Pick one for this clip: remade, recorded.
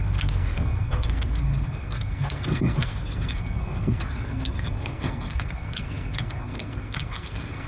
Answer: remade